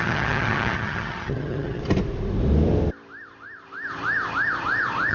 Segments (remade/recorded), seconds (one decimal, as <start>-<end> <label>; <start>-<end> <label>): 0.0-1.8 remade; 1.8-5.1 recorded